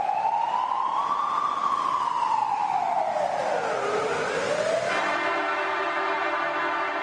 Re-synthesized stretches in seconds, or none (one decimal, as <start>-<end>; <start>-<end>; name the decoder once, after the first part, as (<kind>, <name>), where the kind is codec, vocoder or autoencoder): none